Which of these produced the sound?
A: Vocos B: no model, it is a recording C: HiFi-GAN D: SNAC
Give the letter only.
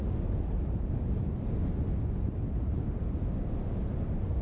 B